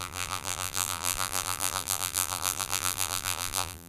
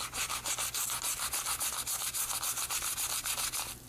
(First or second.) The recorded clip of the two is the second